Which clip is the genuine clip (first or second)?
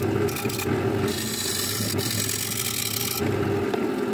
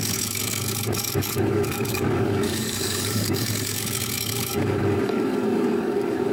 first